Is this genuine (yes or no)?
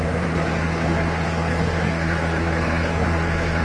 no